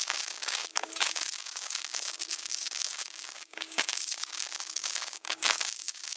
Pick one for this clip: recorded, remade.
remade